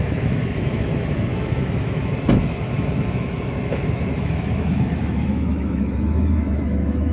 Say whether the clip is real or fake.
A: fake